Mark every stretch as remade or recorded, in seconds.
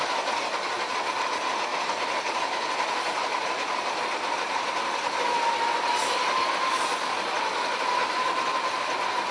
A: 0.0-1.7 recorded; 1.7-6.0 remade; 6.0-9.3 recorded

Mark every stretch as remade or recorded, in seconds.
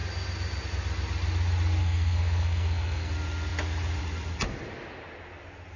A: 0.0-1.8 recorded; 1.8-3.1 remade; 3.1-5.8 recorded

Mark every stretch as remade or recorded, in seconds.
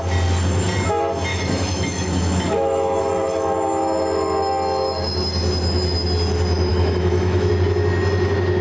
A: 0.0-1.3 recorded; 1.3-3.0 remade; 3.0-6.7 recorded; 6.7-7.5 remade; 7.5-8.6 recorded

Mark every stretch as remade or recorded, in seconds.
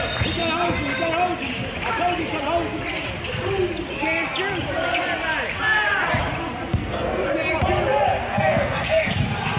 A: 0.0-6.7 recorded; 6.7-7.3 remade; 7.3-8.2 recorded; 8.2-9.2 remade; 9.2-9.6 recorded